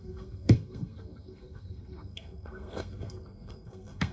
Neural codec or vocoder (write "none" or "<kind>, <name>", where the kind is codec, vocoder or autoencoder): codec, SNAC